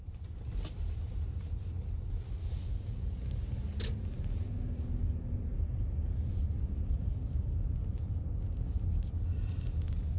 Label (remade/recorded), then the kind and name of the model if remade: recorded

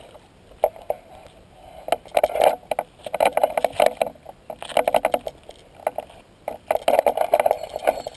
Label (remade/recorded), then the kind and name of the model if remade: recorded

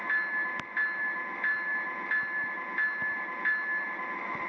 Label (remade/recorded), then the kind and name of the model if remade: recorded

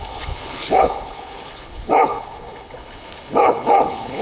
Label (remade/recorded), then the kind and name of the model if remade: remade, codec, HILCodec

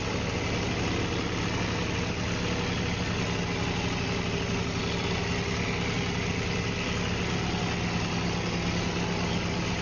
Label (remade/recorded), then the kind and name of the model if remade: recorded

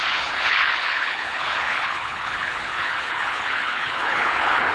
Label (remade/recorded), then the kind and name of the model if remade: remade, codec, HILCodec